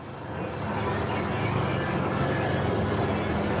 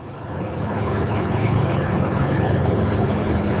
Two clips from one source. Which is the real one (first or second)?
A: first